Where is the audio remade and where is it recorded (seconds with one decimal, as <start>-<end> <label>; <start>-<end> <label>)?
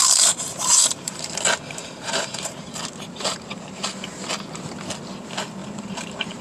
0.0-1.4 remade; 1.4-1.8 recorded; 1.8-4.1 remade; 4.1-5.6 recorded; 5.6-6.4 remade